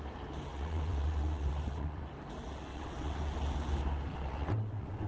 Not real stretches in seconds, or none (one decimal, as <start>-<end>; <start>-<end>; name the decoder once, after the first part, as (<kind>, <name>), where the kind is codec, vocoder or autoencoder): 0.5-2.0 (vocoder, WaveNeXt); 2.7-3.2; 4.1-5.1